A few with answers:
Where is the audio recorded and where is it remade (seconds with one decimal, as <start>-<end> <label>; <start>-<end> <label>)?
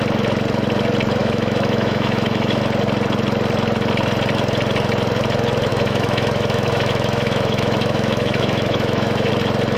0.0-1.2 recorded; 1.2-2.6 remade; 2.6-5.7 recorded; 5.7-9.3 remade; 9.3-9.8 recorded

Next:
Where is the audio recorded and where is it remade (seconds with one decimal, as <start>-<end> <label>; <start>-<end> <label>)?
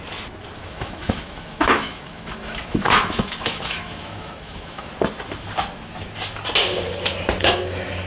0.0-0.6 recorded; 0.6-4.9 remade; 4.9-8.1 recorded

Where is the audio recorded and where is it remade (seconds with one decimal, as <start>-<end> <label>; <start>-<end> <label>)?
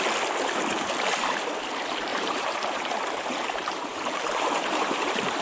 0.0-2.1 recorded; 2.1-5.4 remade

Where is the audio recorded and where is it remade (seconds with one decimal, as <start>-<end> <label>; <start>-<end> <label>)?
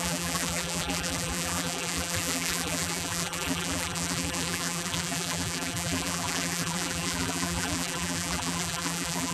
0.0-9.3 remade